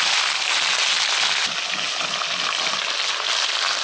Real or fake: real